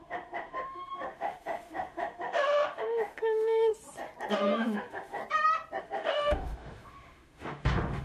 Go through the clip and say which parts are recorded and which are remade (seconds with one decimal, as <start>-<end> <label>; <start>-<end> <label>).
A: 0.0-3.7 remade; 3.7-4.3 recorded; 4.3-5.2 remade; 5.2-5.8 recorded; 5.8-8.0 remade